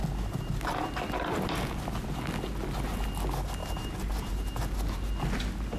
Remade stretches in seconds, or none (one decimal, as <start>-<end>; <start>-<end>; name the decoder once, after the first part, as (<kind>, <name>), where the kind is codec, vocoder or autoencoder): 3.6-4.3 (vocoder, BigVGAN v2)